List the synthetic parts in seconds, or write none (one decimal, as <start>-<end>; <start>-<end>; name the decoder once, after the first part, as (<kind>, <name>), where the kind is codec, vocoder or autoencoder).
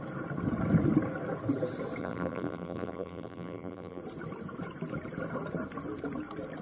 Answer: 2.0-4.0 (vocoder, BigVGAN v2)